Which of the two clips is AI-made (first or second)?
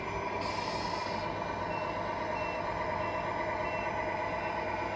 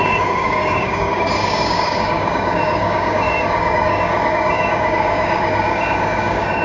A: second